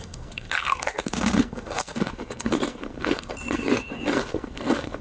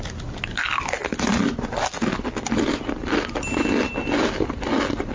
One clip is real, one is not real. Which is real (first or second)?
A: second